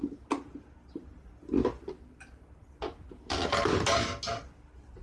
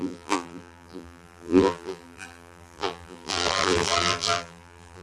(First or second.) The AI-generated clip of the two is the second